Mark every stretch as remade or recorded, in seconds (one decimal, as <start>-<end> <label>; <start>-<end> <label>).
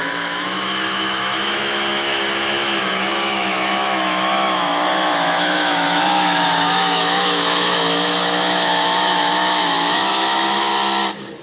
0.0-10.7 remade; 10.7-11.4 recorded